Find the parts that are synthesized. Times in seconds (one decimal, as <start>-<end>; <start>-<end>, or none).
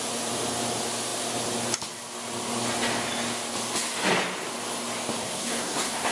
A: 5.2-6.1